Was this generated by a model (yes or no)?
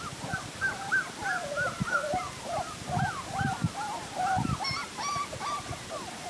no